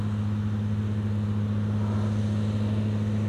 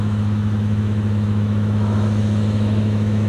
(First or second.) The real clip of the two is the first